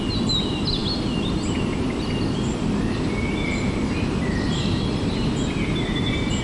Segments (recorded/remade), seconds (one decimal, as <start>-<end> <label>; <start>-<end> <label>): 0.0-6.4 recorded